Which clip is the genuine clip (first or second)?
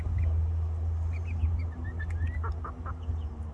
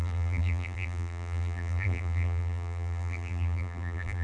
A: first